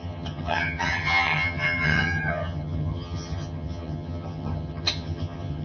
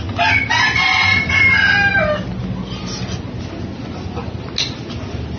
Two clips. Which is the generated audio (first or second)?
first